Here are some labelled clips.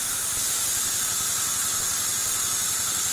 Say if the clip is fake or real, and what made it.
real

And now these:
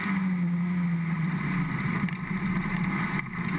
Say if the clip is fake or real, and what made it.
real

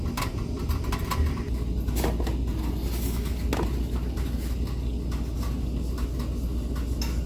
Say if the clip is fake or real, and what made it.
real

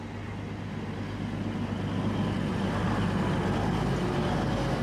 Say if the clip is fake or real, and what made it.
real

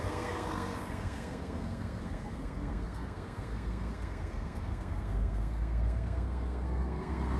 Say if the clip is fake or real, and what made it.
fake, codec, SNAC